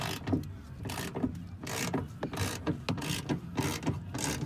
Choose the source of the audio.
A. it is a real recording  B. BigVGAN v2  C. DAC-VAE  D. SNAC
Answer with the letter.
A